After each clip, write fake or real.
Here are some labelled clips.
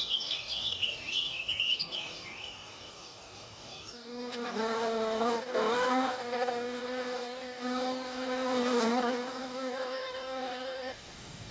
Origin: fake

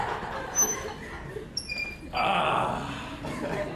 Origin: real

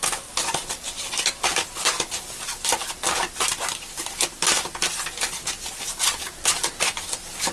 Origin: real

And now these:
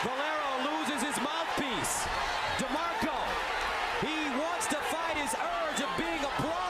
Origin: real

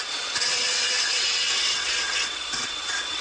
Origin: fake